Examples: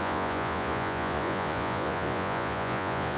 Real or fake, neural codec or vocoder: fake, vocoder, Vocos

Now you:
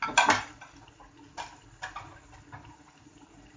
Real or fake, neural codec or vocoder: real